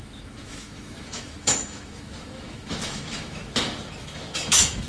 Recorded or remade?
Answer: remade